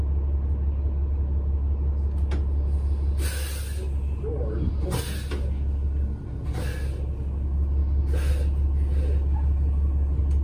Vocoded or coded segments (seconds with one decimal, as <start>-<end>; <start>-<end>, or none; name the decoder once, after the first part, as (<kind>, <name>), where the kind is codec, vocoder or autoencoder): none